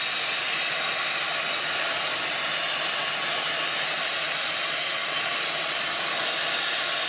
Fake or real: real